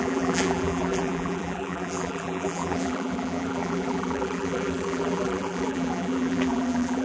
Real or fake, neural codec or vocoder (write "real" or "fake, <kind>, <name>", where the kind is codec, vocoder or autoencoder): fake, vocoder, BigVGAN v2